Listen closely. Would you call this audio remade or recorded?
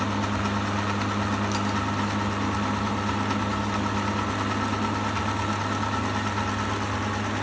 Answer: recorded